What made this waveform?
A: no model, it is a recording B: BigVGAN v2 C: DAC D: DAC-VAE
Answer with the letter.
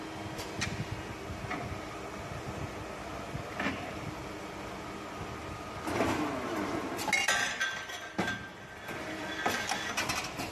A